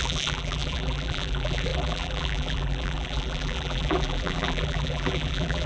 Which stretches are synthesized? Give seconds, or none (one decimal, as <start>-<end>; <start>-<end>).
0.0-5.7